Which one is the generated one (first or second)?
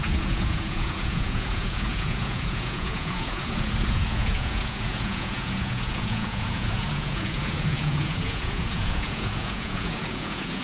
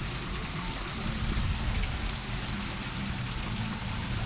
first